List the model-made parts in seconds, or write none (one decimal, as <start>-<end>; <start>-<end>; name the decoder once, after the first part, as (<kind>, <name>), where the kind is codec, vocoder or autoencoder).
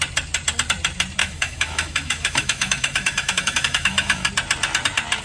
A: 1.2-4.3 (autoencoder, DAC-VAE)